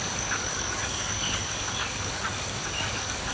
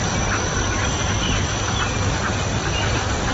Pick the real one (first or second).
second